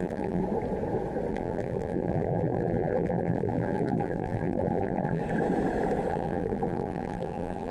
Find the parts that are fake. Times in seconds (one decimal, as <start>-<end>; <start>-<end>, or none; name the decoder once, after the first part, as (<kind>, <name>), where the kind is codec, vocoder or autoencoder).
0.0-0.4 (vocoder, BigVGAN v2); 1.3-5.2; 6.1-7.7